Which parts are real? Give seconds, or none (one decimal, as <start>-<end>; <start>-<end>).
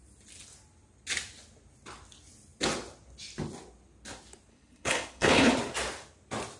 0.0-4.5; 5.5-6.6